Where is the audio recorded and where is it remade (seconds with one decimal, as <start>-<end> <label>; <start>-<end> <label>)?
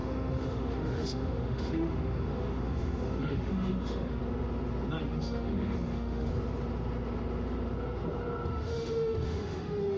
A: 0.0-4.2 remade; 4.2-5.0 recorded; 5.0-6.3 remade; 6.3-8.5 recorded; 8.5-10.0 remade